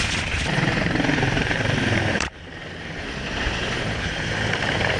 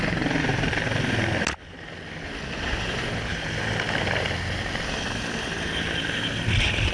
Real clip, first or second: second